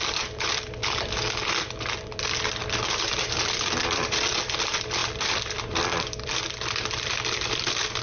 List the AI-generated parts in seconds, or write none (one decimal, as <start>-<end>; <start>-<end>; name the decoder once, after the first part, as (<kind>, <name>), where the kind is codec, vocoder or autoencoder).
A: 0.0-0.8 (vocoder, BigVGAN v2); 2.8-8.0